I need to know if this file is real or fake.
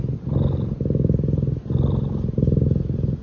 real